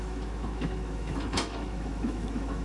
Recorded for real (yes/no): no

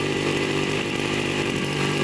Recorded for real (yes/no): no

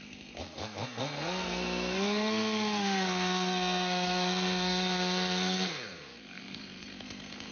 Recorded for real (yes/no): no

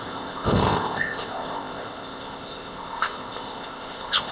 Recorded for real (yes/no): no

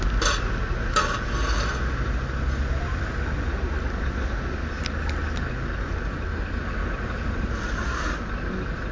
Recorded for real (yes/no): yes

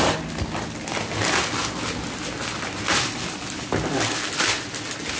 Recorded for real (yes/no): yes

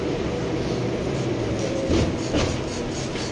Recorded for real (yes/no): yes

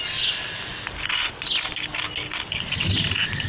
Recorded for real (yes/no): yes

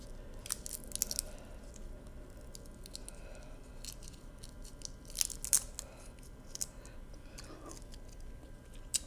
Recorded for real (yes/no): yes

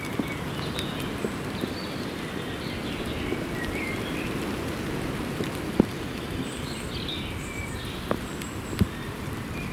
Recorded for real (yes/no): yes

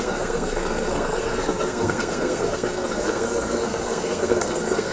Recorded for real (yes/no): no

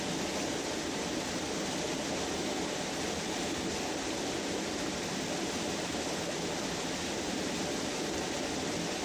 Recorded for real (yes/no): yes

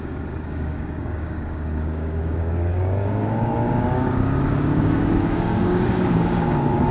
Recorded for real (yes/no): no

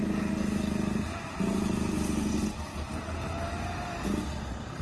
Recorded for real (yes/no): yes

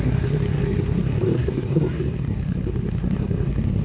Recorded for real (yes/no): no